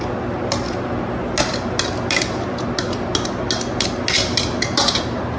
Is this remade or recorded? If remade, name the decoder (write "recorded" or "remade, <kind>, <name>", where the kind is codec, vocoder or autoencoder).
recorded